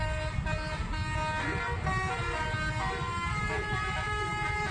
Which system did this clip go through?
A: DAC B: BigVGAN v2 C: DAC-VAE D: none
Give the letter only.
D